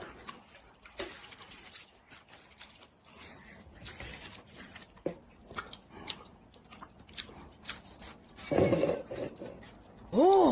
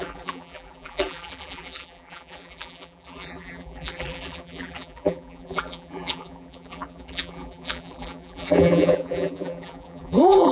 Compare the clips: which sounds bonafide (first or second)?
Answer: first